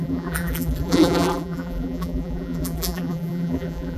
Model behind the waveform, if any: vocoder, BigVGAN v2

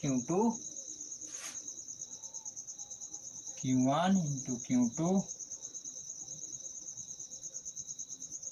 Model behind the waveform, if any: none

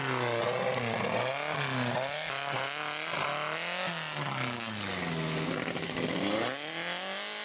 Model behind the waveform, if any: none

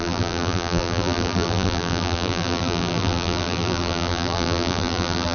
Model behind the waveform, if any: vocoder, BigVGAN v2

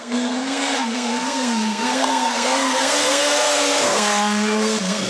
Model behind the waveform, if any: codec, SNAC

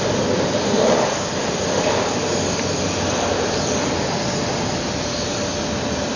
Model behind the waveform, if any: none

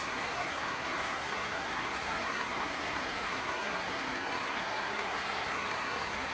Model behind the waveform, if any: codec, SNAC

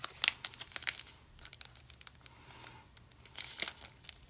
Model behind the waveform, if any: none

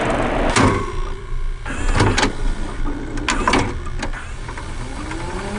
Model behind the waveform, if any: none